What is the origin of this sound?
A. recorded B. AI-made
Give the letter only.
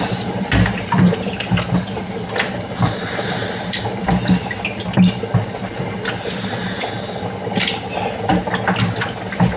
A